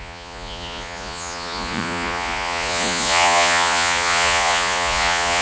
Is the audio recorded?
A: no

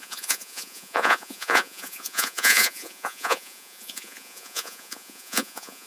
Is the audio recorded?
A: no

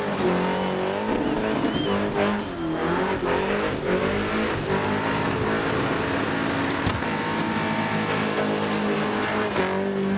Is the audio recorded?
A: yes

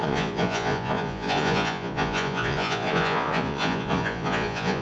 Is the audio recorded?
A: no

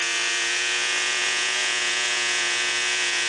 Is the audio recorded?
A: no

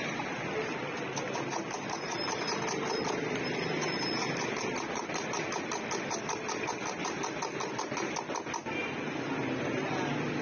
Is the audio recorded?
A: yes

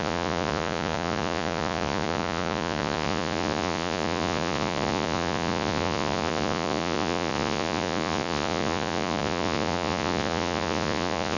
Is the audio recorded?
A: no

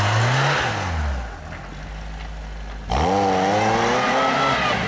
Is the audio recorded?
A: yes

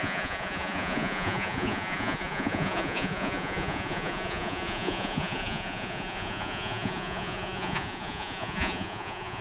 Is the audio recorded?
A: no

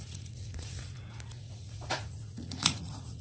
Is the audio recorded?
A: no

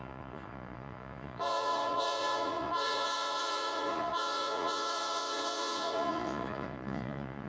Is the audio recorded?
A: no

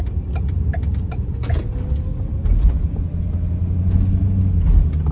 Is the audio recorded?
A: yes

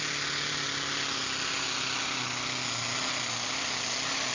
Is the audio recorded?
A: yes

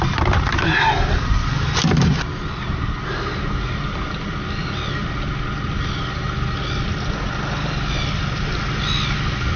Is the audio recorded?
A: yes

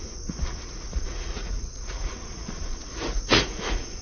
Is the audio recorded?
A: no